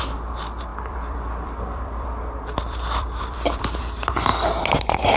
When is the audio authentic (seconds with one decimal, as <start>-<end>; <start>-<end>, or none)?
0.0-0.7; 3.8-4.3